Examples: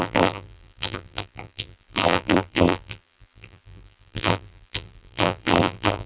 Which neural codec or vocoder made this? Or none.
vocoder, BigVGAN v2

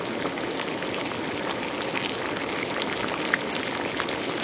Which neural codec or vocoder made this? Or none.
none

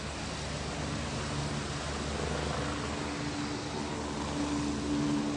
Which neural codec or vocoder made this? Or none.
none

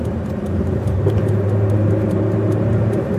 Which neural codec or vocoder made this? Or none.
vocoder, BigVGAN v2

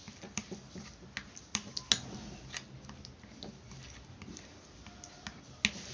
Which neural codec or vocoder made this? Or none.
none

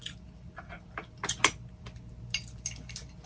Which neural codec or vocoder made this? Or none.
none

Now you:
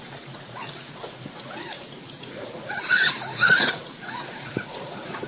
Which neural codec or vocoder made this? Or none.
vocoder, Vocos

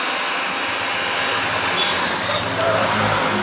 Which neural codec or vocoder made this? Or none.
none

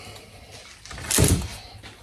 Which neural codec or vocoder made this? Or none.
none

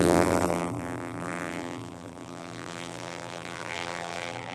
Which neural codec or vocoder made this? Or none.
vocoder, BigVGAN v2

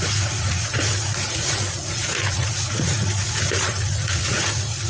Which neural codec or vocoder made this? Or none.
vocoder, Vocos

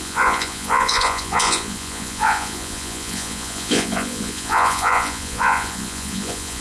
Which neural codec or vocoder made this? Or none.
vocoder, Vocos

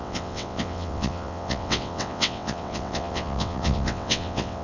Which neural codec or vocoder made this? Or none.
vocoder, WaveNeXt